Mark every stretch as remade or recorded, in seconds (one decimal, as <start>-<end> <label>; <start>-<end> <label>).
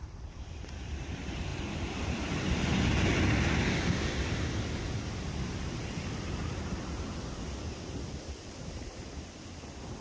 0.0-10.0 recorded